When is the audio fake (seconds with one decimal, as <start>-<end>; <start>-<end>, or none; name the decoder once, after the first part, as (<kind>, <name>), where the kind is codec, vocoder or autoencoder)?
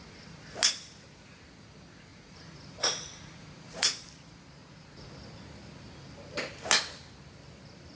2.1-4.0 (vocoder, Vocos); 4.6-5.1